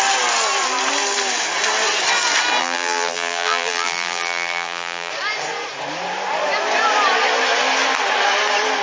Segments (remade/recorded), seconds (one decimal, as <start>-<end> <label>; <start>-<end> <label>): 0.0-2.6 recorded; 2.6-5.1 remade; 5.1-8.8 recorded